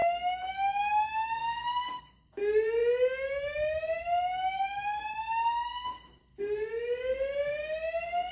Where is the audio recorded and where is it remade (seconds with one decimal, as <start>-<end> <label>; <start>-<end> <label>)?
0.0-1.4 recorded; 1.4-2.0 remade; 2.0-8.3 recorded